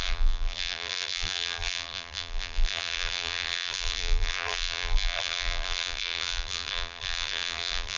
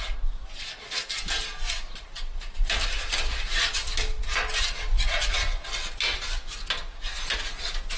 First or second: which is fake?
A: first